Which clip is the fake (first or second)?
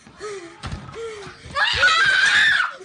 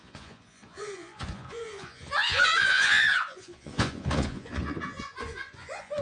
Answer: second